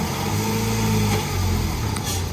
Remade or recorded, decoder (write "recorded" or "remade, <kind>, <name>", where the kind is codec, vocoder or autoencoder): recorded